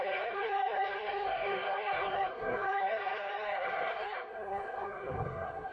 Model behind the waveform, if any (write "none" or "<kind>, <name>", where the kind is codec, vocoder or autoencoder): codec, SNAC